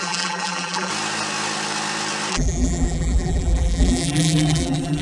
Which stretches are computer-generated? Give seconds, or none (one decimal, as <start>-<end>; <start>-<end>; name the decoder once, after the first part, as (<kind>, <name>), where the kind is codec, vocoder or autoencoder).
0.0-0.9 (vocoder, BigVGAN v2); 2.3-5.0